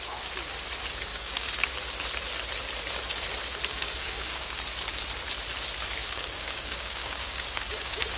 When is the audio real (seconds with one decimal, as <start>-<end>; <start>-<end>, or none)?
0.0-1.1; 1.7-3.7; 4.6-6.0